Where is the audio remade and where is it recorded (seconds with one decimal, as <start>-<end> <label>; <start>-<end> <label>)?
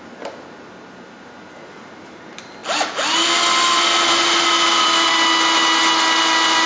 0.0-6.7 recorded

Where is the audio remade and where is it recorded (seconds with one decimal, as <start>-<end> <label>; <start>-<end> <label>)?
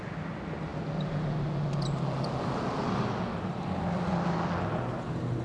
0.0-5.4 recorded